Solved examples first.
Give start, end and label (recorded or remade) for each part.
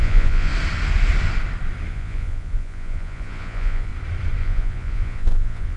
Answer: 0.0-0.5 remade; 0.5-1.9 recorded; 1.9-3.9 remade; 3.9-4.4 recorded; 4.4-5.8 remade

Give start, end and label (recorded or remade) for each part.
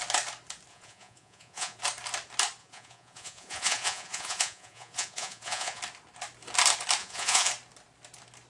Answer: 0.0-0.7 recorded; 0.7-1.8 remade; 1.8-2.6 recorded; 2.6-5.8 remade; 5.8-7.0 recorded; 7.0-7.5 remade; 7.5-8.5 recorded